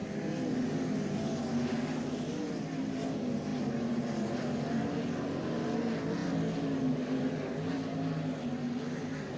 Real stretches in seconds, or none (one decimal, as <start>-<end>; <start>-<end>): 0.0-9.4